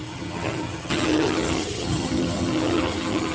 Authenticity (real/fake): fake